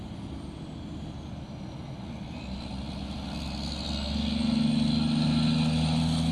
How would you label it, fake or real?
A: real